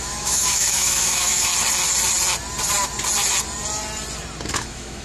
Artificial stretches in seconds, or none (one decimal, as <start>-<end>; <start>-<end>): 0.0-1.5; 4.5-5.0